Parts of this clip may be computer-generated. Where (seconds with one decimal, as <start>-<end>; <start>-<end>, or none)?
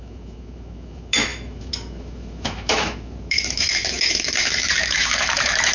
0.0-5.7